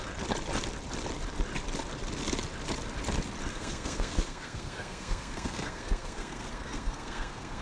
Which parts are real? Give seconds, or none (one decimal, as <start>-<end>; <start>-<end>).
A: 0.0-3.5